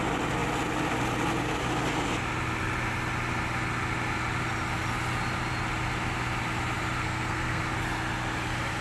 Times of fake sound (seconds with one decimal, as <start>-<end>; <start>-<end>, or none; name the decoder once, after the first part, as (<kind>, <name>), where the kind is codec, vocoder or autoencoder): 7.0-7.6 (codec, SNAC)